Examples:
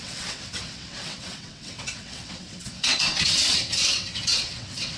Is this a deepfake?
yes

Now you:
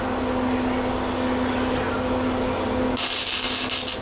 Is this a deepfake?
no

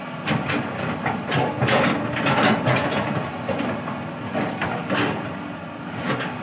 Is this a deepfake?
no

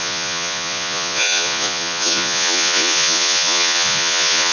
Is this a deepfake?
yes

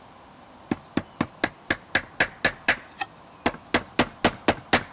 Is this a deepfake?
no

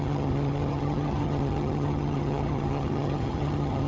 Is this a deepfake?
yes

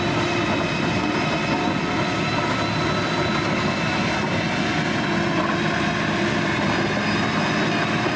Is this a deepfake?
no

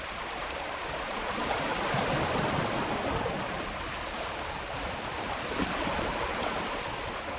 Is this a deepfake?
no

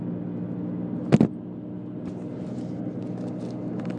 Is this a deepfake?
no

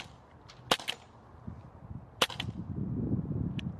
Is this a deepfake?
no